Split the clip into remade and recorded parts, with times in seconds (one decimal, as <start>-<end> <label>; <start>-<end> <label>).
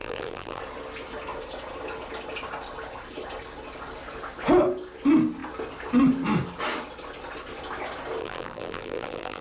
0.0-0.6 remade; 0.6-8.2 recorded; 8.2-9.4 remade